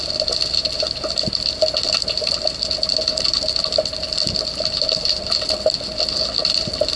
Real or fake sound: real